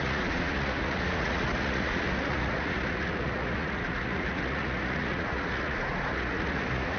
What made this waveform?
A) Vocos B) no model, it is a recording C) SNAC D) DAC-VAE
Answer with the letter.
A